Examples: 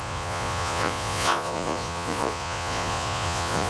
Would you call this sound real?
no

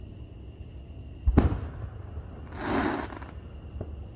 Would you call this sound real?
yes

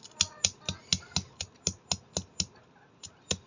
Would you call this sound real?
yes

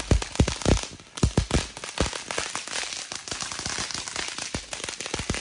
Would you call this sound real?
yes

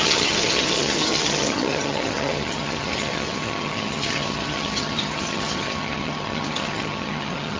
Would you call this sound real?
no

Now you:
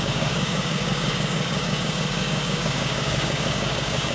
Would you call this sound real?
no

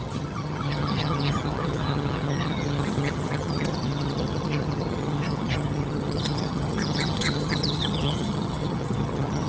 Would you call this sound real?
no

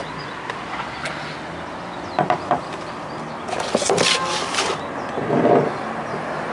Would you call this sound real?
yes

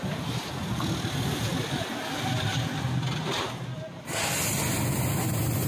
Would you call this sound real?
yes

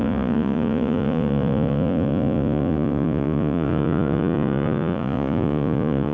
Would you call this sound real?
no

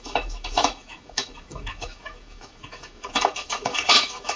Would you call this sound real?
no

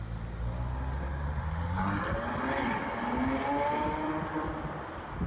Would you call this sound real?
yes